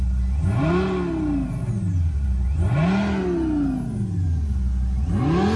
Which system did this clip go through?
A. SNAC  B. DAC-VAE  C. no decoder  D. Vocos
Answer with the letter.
C